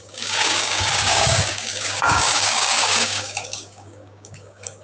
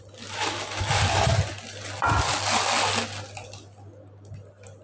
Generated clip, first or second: first